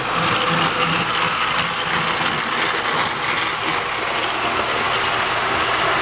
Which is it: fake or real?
real